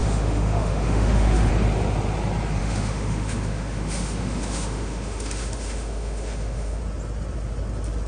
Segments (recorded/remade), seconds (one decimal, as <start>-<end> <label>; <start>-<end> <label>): 0.0-1.5 remade; 1.5-2.6 recorded; 2.6-6.8 remade; 6.8-8.1 recorded